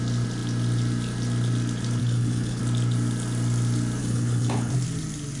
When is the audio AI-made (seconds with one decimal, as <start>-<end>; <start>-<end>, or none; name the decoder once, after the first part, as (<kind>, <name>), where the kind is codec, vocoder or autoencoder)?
2.0-2.6 (codec, HILCodec); 4.0-4.7